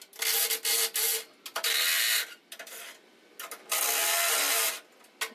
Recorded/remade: recorded